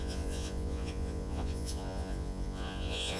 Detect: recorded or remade remade